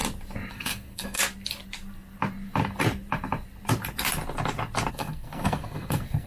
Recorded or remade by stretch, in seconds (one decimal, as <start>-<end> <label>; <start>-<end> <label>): 0.0-0.5 recorded; 0.5-1.2 remade; 1.2-4.9 recorded; 4.9-6.3 remade